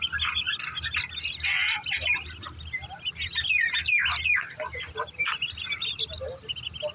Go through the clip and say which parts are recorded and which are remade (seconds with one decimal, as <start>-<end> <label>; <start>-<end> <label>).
0.0-6.9 recorded